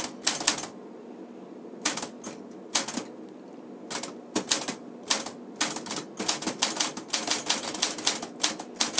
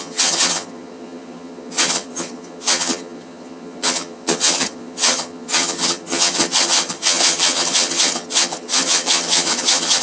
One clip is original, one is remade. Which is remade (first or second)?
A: second